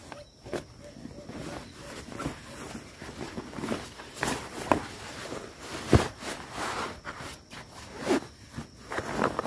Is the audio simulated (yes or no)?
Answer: no